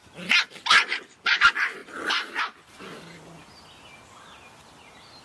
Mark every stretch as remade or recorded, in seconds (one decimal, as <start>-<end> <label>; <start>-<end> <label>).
0.0-5.2 recorded